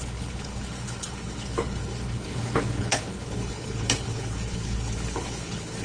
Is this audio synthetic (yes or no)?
yes